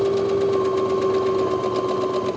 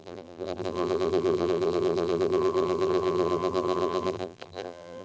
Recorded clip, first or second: first